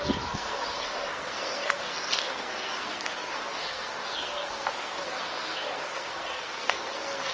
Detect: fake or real fake